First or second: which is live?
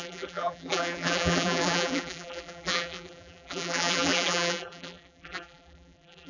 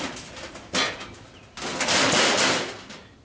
second